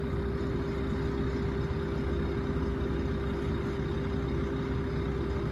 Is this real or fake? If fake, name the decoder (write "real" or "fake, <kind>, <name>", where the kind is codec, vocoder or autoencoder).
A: real